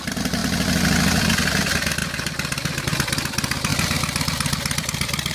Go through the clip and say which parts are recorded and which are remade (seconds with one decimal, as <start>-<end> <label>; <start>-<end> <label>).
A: 0.0-5.3 recorded